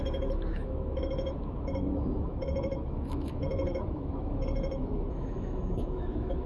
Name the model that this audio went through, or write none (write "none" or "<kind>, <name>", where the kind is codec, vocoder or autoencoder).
autoencoder, DAC-VAE